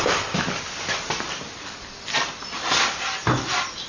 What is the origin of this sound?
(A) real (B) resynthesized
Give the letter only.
A